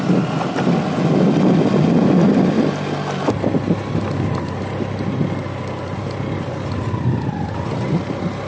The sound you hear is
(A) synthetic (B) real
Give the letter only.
B